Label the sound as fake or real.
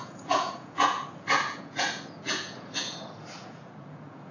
fake